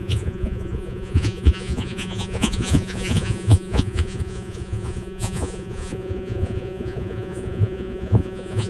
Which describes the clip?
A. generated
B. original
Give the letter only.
A